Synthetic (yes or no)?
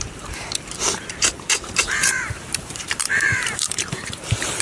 yes